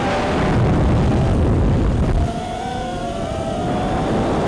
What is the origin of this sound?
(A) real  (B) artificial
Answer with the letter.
A